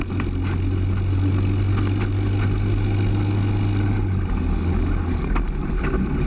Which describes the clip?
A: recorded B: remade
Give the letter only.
A